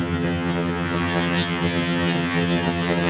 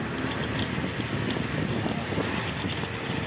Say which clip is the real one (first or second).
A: second